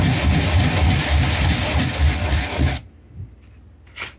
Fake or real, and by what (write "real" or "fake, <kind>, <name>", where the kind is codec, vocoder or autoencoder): real